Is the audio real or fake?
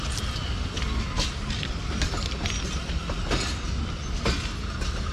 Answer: real